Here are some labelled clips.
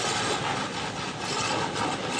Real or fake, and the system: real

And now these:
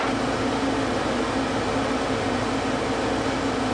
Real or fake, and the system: real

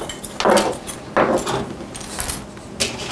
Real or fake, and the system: real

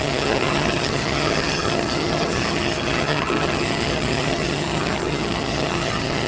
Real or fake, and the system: fake, vocoder, HiFi-GAN